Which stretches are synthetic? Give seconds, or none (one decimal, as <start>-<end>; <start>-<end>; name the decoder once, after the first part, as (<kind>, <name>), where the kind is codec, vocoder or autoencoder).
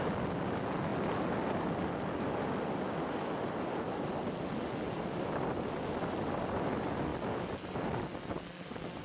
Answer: none